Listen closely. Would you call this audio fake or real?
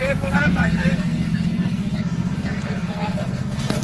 fake